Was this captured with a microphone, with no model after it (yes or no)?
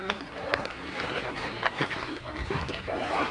no